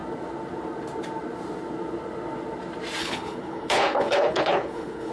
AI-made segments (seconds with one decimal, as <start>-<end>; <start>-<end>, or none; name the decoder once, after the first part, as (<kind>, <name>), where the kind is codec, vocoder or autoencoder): 3.0-5.1 (codec, HILCodec)